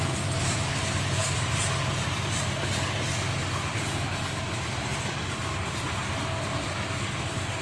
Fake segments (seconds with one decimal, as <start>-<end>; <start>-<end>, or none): none